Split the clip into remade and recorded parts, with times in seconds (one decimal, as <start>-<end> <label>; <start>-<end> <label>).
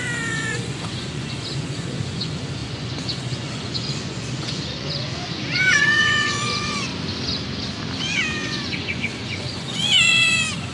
0.0-6.9 remade; 6.9-8.0 recorded; 8.0-10.7 remade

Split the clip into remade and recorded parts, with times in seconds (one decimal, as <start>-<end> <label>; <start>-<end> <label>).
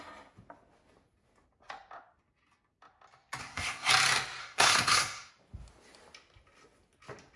0.0-3.4 recorded; 3.4-3.9 remade; 3.9-4.4 recorded; 4.4-5.3 remade; 5.3-7.4 recorded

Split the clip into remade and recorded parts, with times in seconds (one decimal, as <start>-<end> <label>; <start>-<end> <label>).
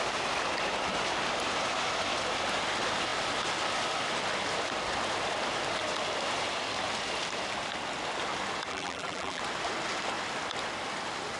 0.0-8.7 recorded; 8.7-9.4 remade; 9.4-11.4 recorded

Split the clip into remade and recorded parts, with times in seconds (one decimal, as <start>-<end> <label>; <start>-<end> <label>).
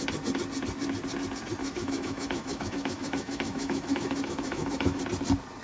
0.0-1.6 recorded; 1.6-5.0 remade; 5.0-5.6 recorded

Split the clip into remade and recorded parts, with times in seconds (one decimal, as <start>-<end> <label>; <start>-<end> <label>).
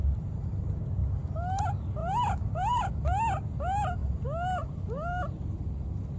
0.0-2.0 recorded; 2.0-2.9 remade; 2.9-6.2 recorded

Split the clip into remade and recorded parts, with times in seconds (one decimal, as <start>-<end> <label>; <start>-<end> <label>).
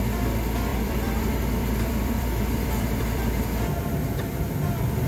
0.0-0.7 recorded; 0.7-3.8 remade; 3.8-5.1 recorded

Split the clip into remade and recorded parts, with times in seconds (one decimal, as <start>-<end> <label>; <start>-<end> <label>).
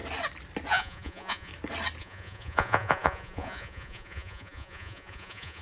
0.0-0.7 recorded; 0.7-1.5 remade; 1.5-2.0 recorded; 2.0-5.6 remade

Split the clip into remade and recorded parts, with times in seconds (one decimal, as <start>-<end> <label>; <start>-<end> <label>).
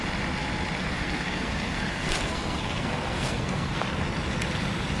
0.0-0.8 recorded; 0.8-3.8 remade; 3.8-5.0 recorded